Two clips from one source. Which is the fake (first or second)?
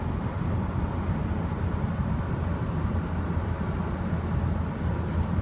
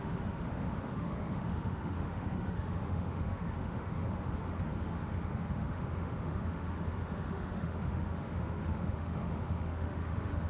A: second